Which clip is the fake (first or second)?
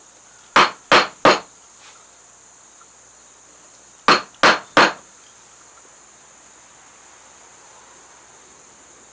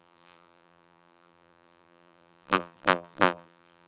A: second